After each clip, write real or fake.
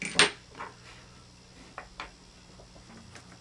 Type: real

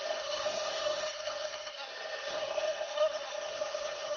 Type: fake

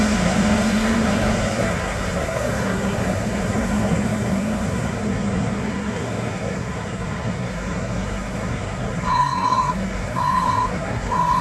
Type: fake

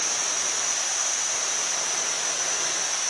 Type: real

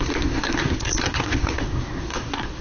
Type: fake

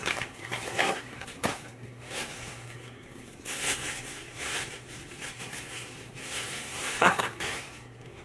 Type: fake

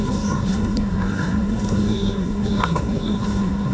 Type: fake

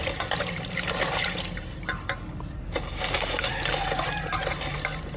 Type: real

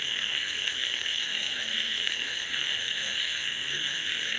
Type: fake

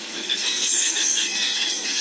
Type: fake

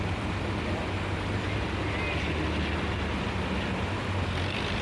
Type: real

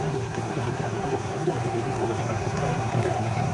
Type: fake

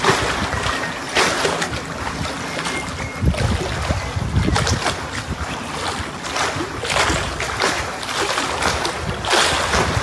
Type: real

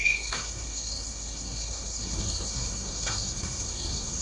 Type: fake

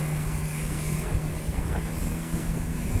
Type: fake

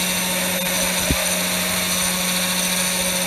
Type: real